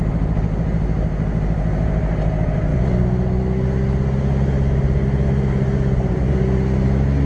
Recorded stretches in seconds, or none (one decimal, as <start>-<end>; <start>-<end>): 0.0-7.3